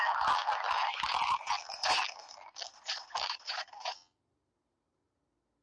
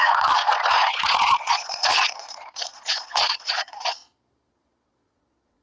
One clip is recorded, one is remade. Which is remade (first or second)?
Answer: second